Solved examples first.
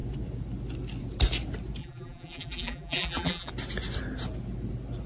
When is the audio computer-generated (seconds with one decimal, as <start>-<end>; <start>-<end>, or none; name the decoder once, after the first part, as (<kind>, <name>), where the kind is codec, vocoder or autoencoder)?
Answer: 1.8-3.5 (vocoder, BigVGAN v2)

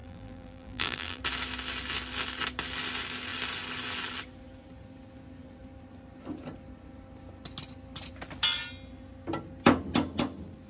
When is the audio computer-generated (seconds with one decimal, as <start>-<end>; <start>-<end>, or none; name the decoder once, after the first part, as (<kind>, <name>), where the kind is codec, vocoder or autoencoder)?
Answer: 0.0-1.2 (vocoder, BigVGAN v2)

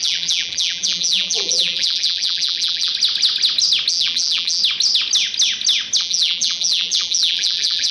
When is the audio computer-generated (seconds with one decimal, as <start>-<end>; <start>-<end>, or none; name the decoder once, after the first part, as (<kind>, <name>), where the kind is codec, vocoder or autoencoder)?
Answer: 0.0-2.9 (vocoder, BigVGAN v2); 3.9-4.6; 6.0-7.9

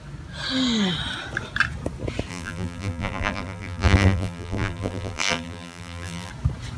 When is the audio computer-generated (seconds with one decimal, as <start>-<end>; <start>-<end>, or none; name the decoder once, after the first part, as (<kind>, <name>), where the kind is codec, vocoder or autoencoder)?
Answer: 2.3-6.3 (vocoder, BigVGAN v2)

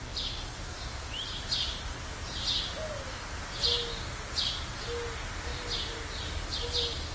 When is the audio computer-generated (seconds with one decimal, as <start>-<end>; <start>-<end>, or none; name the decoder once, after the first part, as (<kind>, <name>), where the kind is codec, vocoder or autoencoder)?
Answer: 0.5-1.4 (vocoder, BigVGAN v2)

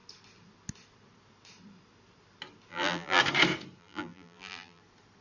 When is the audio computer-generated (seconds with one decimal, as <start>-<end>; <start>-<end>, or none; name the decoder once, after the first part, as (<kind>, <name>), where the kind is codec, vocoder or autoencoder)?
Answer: 2.7-3.2 (vocoder, BigVGAN v2); 3.8-4.8